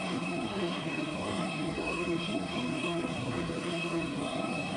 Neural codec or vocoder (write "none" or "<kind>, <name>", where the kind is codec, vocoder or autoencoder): codec, SNAC